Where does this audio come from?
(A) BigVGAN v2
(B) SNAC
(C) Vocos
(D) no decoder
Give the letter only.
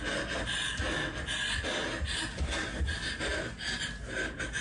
D